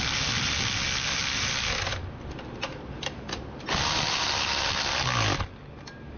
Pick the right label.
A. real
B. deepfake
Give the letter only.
A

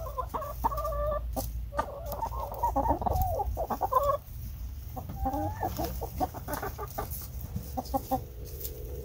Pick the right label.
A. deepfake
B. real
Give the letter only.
B